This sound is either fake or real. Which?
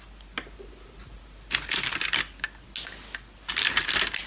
real